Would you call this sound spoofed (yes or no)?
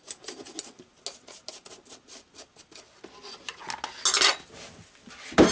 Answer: no